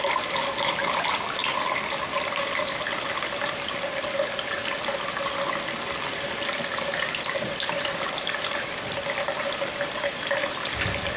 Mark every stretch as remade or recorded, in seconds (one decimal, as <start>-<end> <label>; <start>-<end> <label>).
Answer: 0.0-11.2 recorded